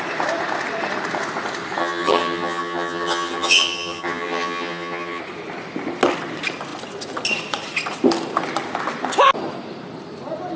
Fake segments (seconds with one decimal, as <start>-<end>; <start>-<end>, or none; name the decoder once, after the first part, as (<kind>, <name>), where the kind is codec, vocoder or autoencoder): 1.8-5.2 (vocoder, HiFi-GAN)

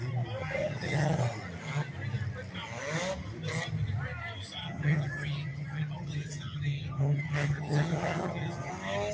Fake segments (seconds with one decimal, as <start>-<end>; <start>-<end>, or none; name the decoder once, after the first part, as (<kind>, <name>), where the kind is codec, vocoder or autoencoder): 0.4-1.2 (vocoder, HiFi-GAN); 4.6-8.7

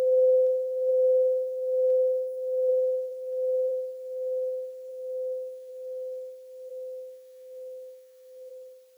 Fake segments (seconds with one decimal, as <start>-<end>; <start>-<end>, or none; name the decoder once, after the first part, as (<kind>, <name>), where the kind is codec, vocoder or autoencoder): 0.9-2.7 (autoencoder, DAC-VAE); 4.9-5.7; 6.7-8.5

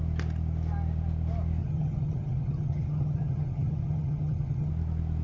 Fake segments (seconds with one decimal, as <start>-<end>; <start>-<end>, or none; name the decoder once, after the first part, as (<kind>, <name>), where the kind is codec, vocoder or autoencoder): 1.6-4.7 (vocoder, HiFi-GAN)

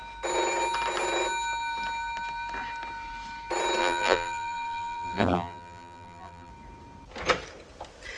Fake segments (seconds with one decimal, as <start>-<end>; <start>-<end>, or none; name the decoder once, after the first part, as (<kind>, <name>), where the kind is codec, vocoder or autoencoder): 3.8-6.5 (vocoder, BigVGAN v2)

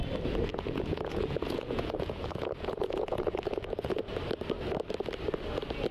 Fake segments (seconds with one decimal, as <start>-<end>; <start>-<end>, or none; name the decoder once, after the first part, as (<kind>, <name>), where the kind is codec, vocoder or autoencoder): 0.5-4.0 (vocoder, Vocos)

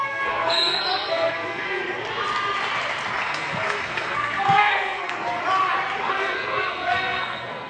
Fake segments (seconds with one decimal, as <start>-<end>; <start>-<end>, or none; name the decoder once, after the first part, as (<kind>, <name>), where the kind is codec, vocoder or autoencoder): 0.0-1.8 (codec, SNAC); 3.2-5.4; 6.1-7.7